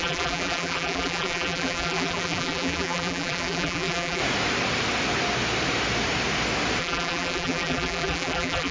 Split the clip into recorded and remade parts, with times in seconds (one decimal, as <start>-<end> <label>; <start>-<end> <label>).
0.0-4.2 remade; 4.2-6.8 recorded; 6.8-8.7 remade